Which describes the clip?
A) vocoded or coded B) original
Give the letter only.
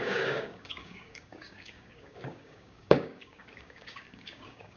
A